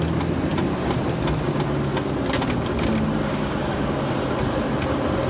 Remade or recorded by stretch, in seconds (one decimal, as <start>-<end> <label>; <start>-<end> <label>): 0.0-3.3 recorded; 3.3-4.0 remade; 4.0-5.3 recorded